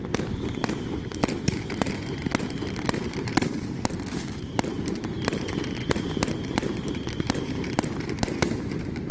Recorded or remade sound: remade